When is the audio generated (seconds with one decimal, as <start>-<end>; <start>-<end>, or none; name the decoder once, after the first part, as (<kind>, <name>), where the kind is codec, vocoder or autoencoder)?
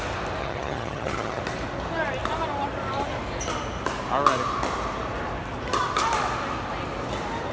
0.4-1.4 (vocoder, HiFi-GAN)